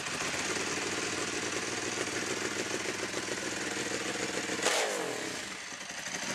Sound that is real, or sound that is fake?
real